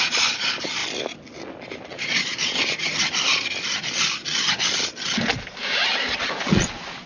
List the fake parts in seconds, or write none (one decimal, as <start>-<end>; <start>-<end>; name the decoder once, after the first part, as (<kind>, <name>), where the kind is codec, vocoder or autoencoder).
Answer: 0.0-0.8 (vocoder, Vocos); 1.9-2.6; 6.4-7.1